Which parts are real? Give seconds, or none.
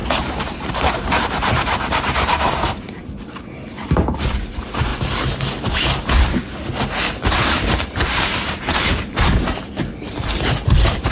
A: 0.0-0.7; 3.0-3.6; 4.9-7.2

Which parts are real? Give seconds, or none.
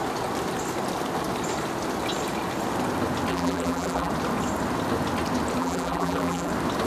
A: 0.0-3.3; 4.1-5.6; 6.5-6.9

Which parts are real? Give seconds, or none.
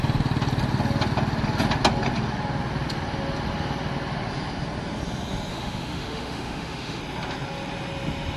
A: 0.0-5.5; 7.0-8.4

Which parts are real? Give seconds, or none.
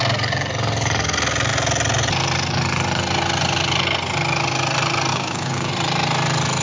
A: 0.0-5.1; 5.7-6.6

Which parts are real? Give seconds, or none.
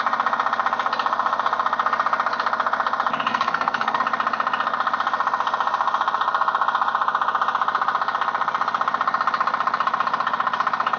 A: 0.0-3.3; 4.0-11.0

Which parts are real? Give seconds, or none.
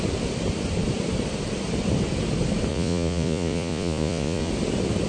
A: 0.0-2.7; 4.5-5.1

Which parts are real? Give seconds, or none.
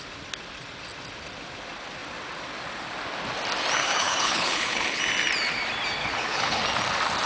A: 0.0-3.8; 5.0-6.0; 6.6-7.3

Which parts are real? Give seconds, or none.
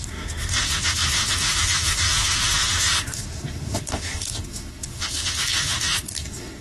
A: none